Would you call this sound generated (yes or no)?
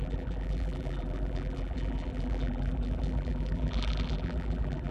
yes